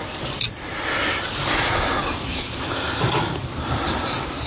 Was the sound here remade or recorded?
recorded